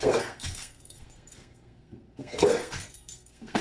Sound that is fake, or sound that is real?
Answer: fake